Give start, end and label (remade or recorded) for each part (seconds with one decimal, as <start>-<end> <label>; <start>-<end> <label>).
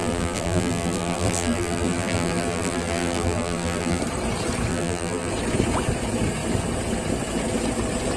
0.0-4.0 remade; 4.0-4.7 recorded; 4.7-5.3 remade; 5.3-8.2 recorded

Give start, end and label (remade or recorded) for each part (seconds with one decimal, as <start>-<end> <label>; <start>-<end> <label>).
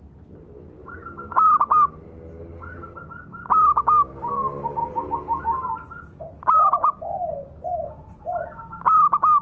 0.0-9.4 recorded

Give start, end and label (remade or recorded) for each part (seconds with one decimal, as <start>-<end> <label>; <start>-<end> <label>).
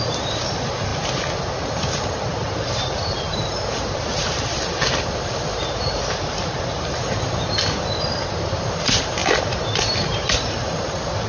0.0-0.9 remade; 0.9-2.5 recorded; 2.5-7.0 remade; 7.0-8.1 recorded; 8.1-9.2 remade; 9.2-9.8 recorded; 9.8-11.3 remade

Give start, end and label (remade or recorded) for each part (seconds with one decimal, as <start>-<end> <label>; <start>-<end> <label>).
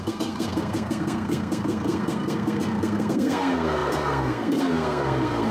0.0-5.5 remade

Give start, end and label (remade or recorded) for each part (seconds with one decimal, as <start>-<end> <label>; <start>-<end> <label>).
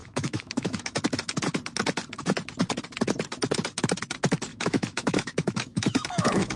0.0-1.0 remade; 1.0-4.5 recorded; 4.5-6.6 remade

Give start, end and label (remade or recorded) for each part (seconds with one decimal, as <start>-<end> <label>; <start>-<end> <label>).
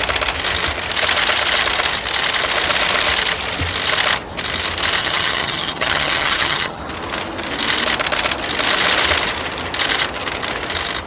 0.0-5.0 recorded; 5.0-6.8 remade; 6.8-11.1 recorded